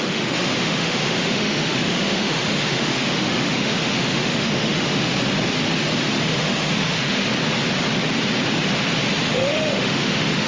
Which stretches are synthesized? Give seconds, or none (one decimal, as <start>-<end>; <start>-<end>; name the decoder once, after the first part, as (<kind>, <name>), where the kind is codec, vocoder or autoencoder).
0.0-5.1 (autoencoder, DAC-VAE); 6.3-7.2; 9.2-10.5